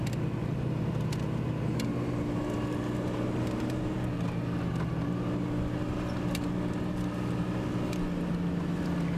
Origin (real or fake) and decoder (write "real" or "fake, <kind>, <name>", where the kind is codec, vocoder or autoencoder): real